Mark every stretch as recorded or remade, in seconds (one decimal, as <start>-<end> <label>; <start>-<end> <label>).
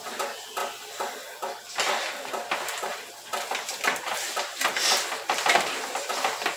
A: 0.0-0.6 recorded; 0.6-2.0 remade; 2.0-2.9 recorded; 2.9-4.7 remade; 4.7-6.6 recorded